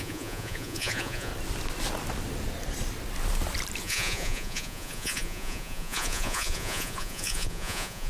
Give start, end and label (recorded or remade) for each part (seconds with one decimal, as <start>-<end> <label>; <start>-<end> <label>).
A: 0.0-1.3 remade; 1.3-3.8 recorded; 3.8-8.1 remade